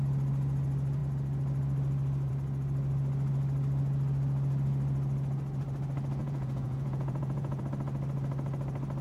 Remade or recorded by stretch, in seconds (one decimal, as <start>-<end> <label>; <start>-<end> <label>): 0.0-6.2 recorded; 6.2-7.6 remade; 7.6-9.0 recorded